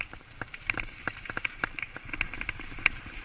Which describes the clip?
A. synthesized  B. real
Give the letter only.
A